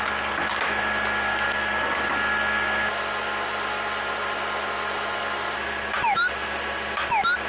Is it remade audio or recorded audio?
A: recorded